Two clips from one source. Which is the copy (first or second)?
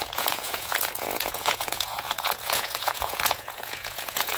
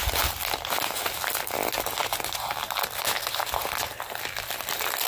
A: first